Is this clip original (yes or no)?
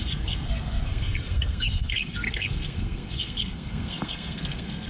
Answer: no